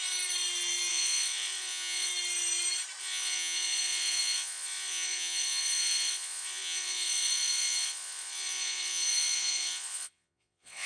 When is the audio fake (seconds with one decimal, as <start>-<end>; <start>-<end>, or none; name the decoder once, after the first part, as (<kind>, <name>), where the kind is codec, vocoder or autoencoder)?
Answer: 0.9-2.1 (vocoder, Vocos); 3.0-10.9